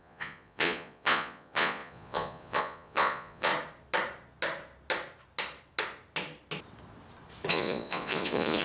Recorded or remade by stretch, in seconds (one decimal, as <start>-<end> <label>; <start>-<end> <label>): 0.0-3.5 remade; 3.5-7.5 recorded; 7.5-8.6 remade